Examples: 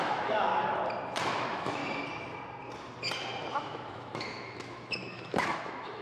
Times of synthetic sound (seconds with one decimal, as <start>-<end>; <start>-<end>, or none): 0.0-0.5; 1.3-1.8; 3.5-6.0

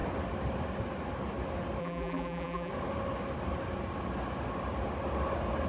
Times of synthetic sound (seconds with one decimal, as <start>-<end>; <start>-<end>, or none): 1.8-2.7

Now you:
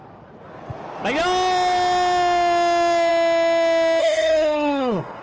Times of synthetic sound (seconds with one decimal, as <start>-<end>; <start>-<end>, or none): 4.0-5.2